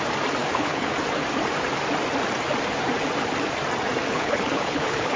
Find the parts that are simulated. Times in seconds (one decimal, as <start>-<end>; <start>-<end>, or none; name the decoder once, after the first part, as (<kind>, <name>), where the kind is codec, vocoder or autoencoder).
0.4-0.9 (codec, HILCodec); 4.1-5.2